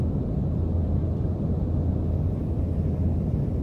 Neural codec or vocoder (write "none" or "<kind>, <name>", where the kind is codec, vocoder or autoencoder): none